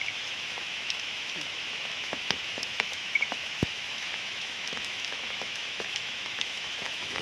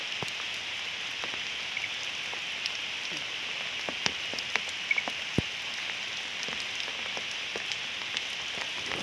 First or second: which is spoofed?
first